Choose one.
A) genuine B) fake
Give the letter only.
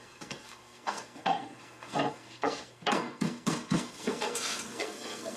B